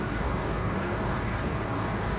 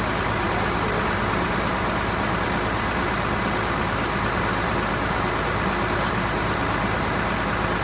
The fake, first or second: first